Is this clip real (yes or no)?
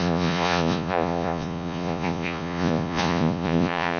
no